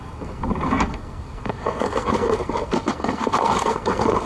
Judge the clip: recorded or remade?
remade